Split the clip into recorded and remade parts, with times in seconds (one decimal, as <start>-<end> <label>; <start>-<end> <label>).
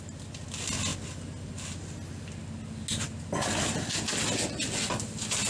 0.0-5.5 recorded